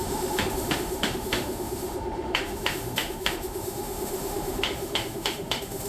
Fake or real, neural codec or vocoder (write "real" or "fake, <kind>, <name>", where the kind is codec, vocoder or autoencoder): fake, autoencoder, DAC-VAE